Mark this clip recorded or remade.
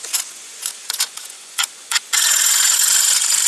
remade